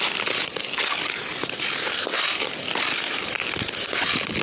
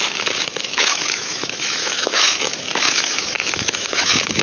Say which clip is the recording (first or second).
first